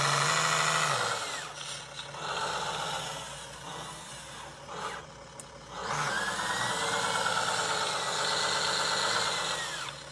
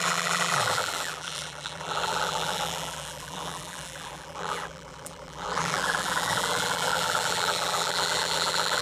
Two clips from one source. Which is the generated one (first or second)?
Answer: second